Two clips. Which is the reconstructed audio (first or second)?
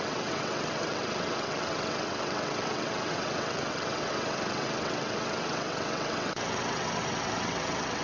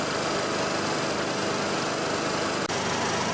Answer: first